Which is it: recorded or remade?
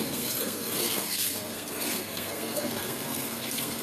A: remade